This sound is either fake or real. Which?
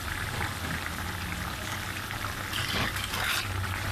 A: real